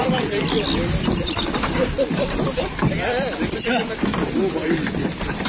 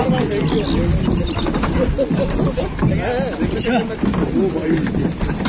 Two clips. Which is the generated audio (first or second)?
first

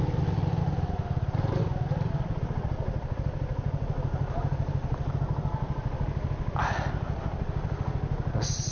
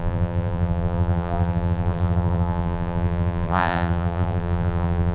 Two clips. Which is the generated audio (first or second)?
second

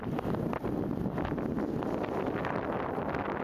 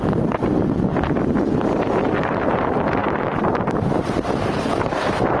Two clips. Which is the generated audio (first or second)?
second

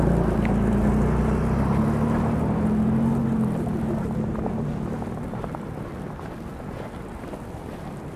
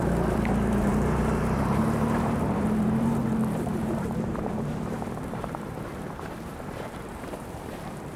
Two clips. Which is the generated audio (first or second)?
second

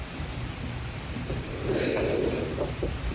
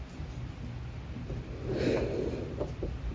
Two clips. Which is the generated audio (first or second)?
first